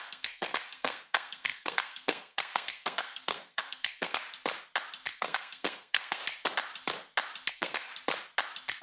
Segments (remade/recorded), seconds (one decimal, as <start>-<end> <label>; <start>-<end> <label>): 0.0-4.2 remade; 4.2-5.1 recorded; 5.1-6.2 remade; 6.2-7.5 recorded; 7.5-7.9 remade; 7.9-8.8 recorded